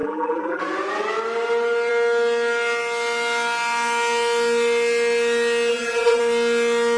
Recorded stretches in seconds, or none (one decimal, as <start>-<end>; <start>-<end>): 0.6-5.7; 6.2-7.0